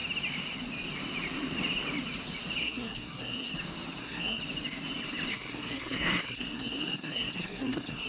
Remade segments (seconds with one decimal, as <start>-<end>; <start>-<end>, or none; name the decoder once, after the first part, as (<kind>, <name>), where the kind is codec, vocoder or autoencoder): 2.6-3.5 (codec, SNAC); 4.0-4.4; 5.3-8.1